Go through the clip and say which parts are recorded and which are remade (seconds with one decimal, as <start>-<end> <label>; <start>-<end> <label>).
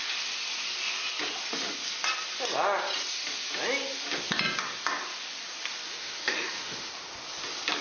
0.0-5.9 recorded; 5.9-6.9 remade; 6.9-7.8 recorded